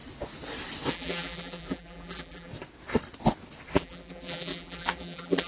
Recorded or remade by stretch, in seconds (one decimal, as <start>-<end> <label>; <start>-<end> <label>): 0.0-0.9 recorded; 0.9-2.5 remade; 2.5-3.7 recorded; 3.7-5.5 remade